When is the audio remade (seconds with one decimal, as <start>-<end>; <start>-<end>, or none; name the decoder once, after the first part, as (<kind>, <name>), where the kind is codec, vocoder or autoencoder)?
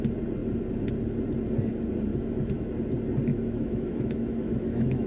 2.1-2.7 (autoencoder, DAC-VAE); 3.3-5.1